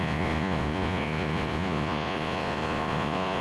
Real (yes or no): no